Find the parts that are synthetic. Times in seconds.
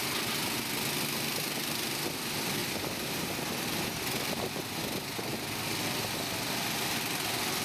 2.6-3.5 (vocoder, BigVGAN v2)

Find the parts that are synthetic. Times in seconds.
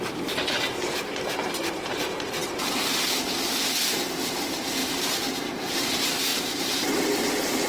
0.0-4.8 (vocoder, BigVGAN v2); 5.4-7.7